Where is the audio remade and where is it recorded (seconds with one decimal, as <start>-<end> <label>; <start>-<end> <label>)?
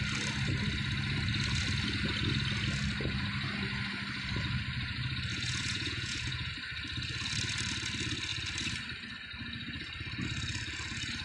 0.0-5.3 recorded; 5.3-6.5 remade; 6.5-11.2 recorded